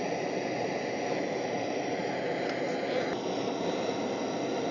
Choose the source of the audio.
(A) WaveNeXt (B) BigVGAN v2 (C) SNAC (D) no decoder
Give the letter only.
D